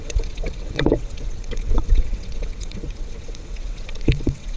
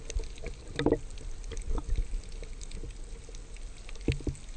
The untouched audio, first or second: second